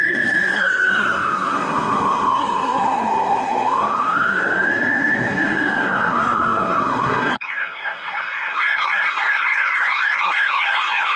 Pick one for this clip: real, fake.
fake